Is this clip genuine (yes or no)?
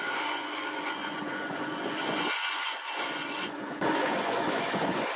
no